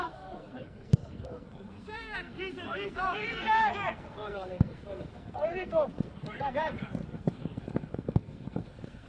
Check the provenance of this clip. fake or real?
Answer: fake